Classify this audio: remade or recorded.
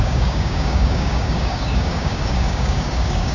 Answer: remade